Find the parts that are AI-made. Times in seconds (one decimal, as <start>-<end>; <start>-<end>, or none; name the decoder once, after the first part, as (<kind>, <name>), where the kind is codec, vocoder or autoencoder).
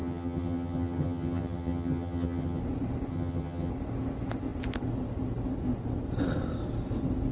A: 0.0-2.6 (vocoder, HiFi-GAN); 3.1-3.7